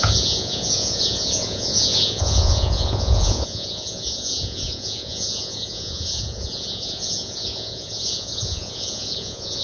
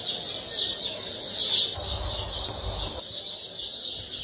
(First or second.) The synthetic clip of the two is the first